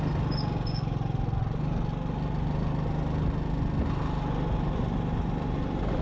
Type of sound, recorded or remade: recorded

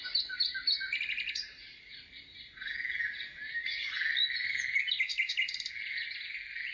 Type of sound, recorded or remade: recorded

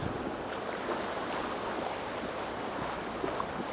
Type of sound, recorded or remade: recorded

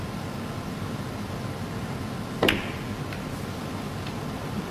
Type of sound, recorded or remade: recorded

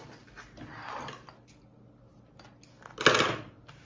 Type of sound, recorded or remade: recorded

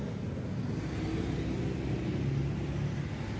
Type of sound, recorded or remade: recorded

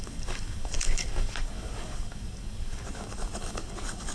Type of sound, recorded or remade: remade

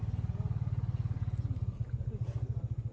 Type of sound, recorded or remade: recorded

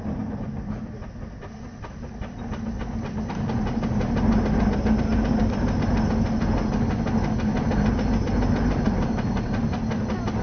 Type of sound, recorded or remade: recorded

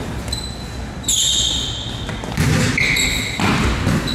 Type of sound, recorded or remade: recorded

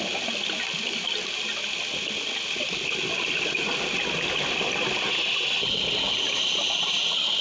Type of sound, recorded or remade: recorded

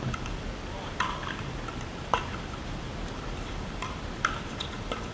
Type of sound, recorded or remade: recorded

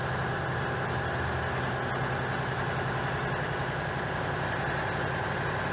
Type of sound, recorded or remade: recorded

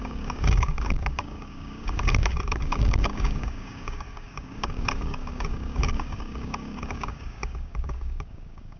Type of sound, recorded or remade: remade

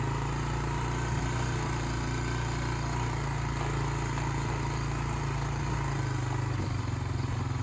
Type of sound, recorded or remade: recorded